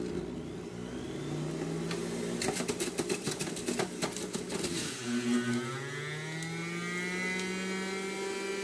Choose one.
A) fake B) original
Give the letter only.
B